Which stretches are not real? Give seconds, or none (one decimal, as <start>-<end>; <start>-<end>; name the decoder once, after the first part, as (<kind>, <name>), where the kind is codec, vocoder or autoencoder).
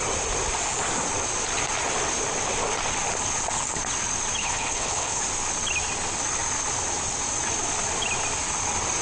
4.4-5.2 (codec, HILCodec)